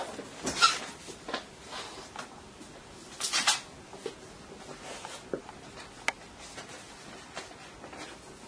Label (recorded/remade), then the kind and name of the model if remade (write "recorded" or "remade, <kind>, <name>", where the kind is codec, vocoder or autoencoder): recorded